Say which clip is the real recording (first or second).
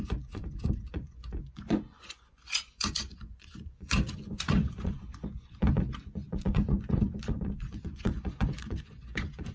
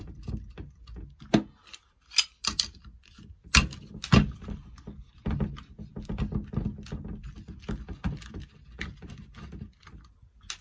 second